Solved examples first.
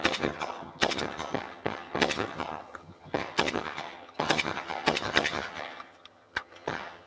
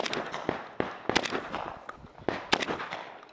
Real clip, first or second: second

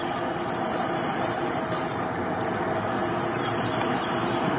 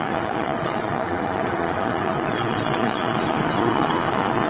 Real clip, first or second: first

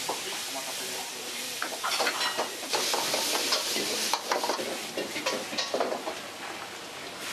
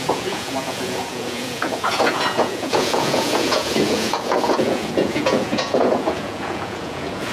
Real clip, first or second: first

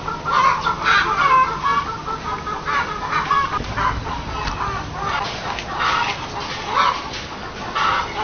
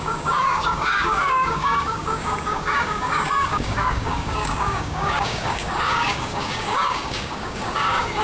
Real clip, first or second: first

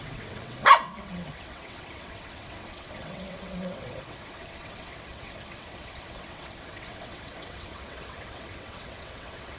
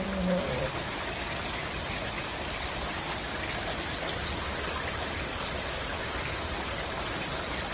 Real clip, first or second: second